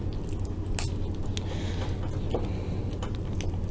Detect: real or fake real